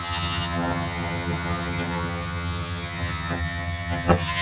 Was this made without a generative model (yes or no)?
no